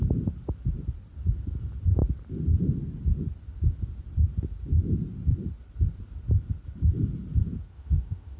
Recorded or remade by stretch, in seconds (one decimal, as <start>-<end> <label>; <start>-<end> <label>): 0.0-7.7 recorded; 7.7-8.4 remade